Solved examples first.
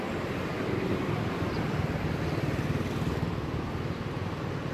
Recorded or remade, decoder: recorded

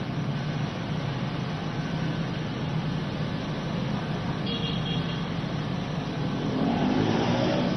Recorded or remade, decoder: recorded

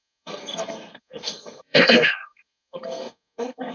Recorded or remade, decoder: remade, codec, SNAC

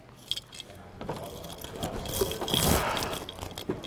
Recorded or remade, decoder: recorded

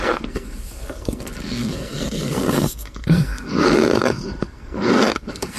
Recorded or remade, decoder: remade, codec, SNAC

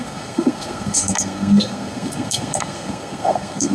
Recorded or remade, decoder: remade, codec, SNAC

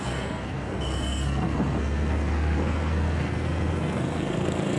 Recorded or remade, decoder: remade, codec, SNAC